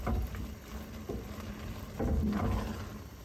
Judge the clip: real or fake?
real